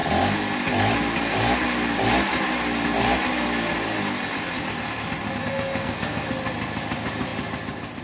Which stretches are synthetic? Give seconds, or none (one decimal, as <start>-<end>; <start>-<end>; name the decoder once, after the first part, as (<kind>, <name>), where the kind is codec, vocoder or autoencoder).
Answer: 5.4-6.3 (codec, SNAC)